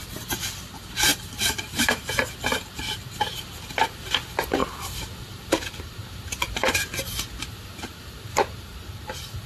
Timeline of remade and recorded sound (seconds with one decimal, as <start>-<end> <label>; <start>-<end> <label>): 0.0-1.1 recorded; 1.1-2.1 remade; 2.1-4.6 recorded; 4.6-9.5 remade